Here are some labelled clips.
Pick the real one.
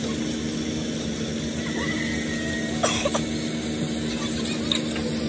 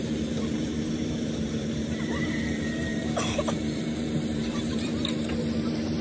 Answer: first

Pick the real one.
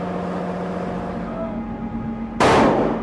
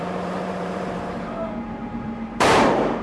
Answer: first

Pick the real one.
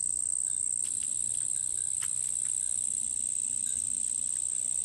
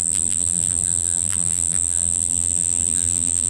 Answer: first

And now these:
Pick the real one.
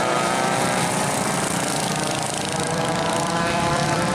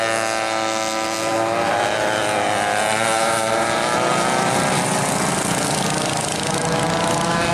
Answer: second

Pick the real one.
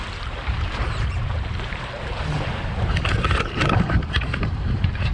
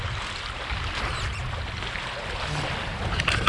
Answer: second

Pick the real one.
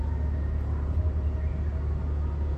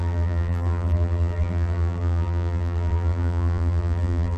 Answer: first